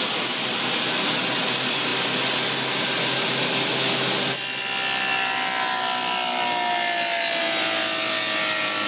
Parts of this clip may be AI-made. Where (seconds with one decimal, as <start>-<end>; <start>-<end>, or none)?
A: none